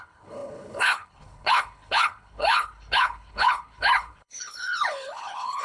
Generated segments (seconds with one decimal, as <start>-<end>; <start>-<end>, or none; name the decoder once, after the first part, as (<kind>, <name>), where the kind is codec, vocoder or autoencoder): 0.0-5.6 (codec, HILCodec)